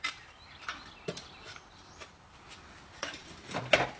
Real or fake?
real